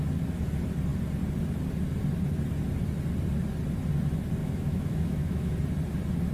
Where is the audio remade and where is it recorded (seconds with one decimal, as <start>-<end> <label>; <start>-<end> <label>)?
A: 0.0-4.4 recorded; 4.4-5.5 remade; 5.5-6.3 recorded